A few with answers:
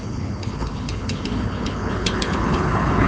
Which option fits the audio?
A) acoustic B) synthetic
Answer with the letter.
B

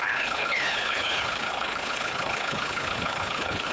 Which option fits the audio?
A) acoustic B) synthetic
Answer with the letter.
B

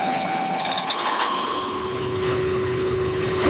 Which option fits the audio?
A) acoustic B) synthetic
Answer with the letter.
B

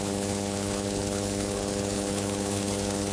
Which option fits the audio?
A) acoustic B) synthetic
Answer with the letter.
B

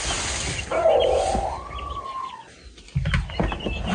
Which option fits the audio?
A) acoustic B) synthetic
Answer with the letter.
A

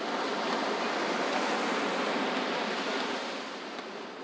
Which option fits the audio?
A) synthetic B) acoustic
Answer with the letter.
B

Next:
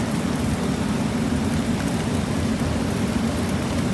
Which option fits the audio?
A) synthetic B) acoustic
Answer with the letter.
B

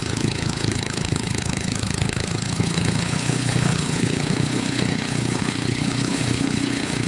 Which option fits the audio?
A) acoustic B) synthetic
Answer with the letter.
B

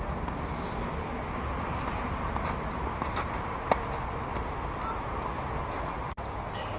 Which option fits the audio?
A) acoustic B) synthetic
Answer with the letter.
A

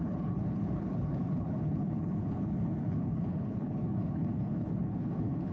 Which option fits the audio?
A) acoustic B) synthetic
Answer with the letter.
B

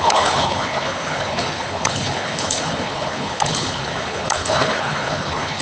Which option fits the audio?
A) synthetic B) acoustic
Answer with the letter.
A